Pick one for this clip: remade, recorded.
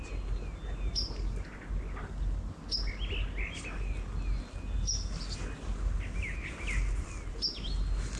recorded